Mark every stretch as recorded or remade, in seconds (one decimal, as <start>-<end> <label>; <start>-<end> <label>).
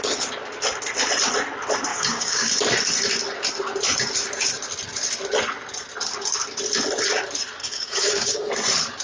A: 0.0-1.9 recorded; 1.9-2.5 remade; 2.5-7.6 recorded; 7.6-8.5 remade; 8.5-9.0 recorded